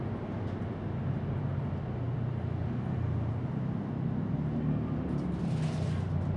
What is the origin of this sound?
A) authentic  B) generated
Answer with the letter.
A